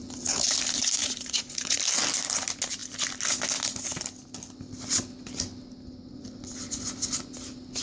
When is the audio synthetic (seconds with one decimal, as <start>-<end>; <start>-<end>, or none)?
1.0-1.8